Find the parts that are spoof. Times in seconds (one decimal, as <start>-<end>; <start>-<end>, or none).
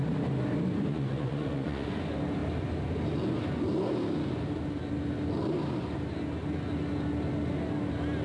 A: 0.9-2.0